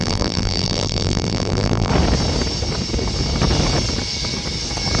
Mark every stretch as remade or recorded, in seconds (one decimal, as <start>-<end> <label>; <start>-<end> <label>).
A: 0.0-1.9 remade; 1.9-5.0 recorded